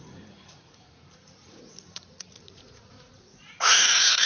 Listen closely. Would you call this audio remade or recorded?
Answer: remade